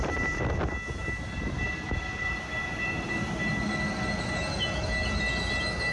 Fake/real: real